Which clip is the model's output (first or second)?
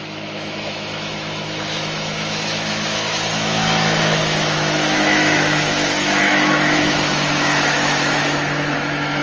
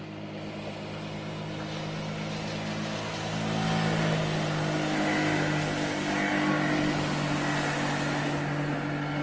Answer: first